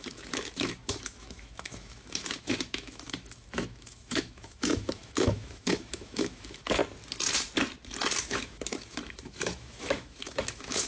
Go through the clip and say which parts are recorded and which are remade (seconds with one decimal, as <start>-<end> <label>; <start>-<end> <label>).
0.0-6.8 remade; 6.8-8.2 recorded; 8.2-10.9 remade